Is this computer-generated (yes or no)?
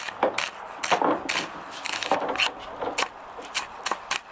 no